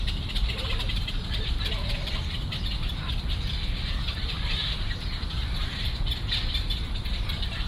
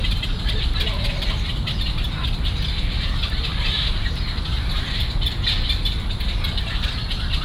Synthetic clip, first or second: first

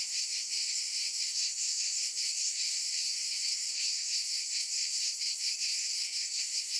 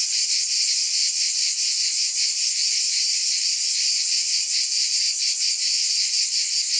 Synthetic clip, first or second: first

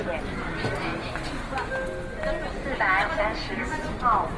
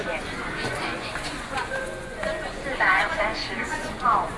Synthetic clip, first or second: second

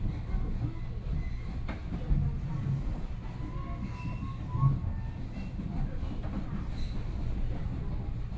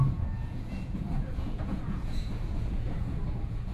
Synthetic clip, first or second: second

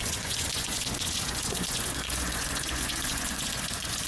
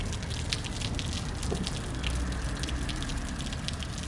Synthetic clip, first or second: first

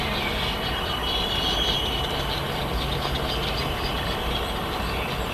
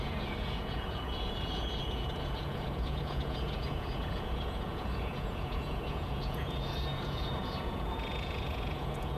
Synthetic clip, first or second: second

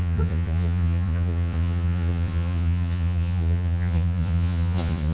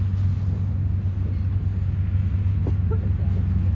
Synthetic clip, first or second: first